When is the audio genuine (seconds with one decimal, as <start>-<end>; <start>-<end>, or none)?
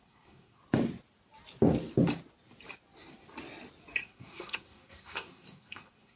0.6-4.0